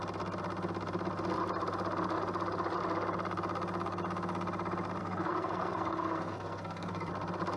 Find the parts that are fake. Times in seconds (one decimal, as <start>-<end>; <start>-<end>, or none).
5.0-7.1